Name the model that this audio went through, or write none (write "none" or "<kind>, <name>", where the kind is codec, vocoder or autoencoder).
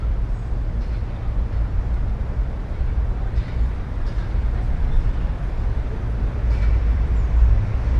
vocoder, BigVGAN v2